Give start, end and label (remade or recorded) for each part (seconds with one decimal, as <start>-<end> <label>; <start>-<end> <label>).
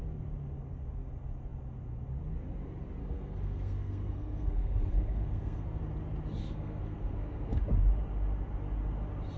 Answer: 0.0-3.0 recorded; 3.0-5.8 remade; 5.8-6.4 recorded; 6.4-7.6 remade; 7.6-9.4 recorded